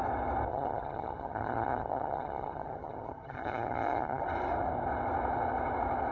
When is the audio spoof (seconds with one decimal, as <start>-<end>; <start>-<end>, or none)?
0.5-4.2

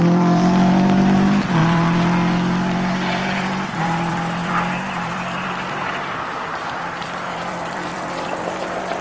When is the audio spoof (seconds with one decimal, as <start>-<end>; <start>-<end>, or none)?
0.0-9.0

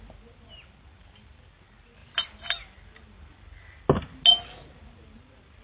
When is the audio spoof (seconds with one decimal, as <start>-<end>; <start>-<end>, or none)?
none